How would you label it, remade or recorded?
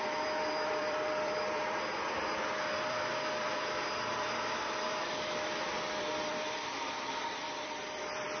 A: remade